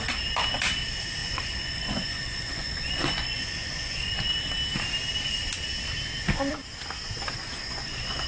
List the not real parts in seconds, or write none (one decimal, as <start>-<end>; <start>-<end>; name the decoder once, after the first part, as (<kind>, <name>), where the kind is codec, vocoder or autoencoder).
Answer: 1.2-4.1 (vocoder, Vocos); 7.4-8.3